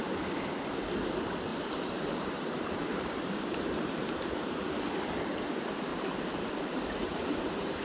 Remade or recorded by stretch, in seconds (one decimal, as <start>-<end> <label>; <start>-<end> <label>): 0.0-1.5 recorded; 1.5-4.6 remade; 4.6-5.9 recorded; 5.9-6.5 remade; 6.5-7.0 recorded; 7.0-7.8 remade